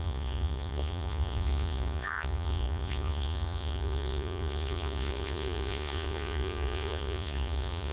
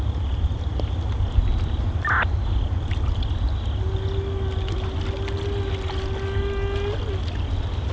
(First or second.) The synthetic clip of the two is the first